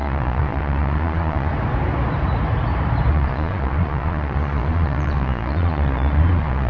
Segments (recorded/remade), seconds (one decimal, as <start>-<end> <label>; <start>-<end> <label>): 0.0-1.5 remade; 1.5-3.1 recorded; 3.1-6.7 remade